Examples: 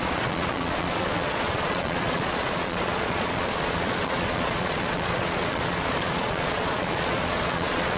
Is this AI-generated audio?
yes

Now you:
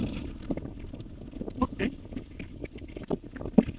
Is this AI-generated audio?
no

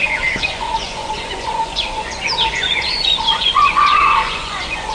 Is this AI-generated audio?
yes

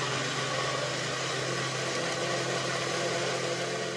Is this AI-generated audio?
no